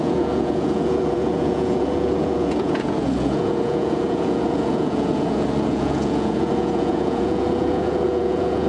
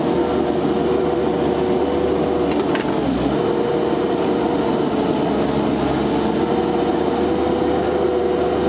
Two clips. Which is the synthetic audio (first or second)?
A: first